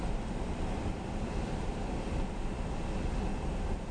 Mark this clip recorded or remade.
remade